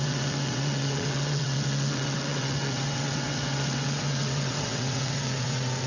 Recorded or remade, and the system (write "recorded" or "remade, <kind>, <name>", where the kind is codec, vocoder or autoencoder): remade, vocoder, WaveNeXt